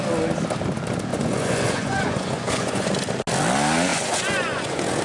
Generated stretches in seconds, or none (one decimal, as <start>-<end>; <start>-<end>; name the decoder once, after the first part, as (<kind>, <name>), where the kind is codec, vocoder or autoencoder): 1.1-2.9 (vocoder, Vocos); 3.9-5.0